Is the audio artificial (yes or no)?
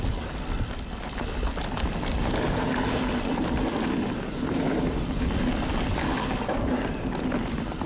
no